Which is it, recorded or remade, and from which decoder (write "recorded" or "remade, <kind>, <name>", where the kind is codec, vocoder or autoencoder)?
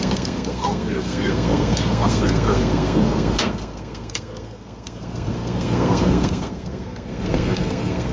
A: remade, codec, SNAC